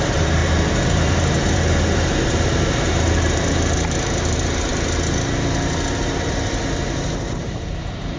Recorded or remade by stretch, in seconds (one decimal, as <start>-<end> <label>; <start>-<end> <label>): 0.0-4.7 remade; 4.7-7.4 recorded; 7.4-8.2 remade